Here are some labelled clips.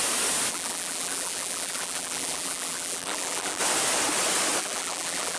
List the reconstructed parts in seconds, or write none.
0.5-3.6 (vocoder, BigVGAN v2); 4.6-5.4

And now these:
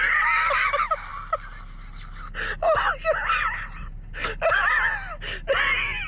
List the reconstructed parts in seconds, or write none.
none

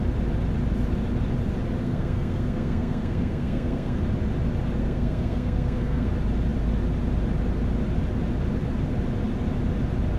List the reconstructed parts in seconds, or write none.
1.8-4.0 (codec, SNAC); 4.8-6.1

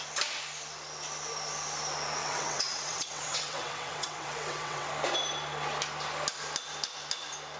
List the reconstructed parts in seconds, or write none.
2.2-4.9 (vocoder, WaveNeXt)

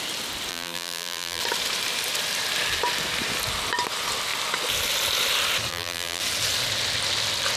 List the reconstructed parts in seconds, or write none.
0.5-1.4 (vocoder, BigVGAN v2); 5.7-6.2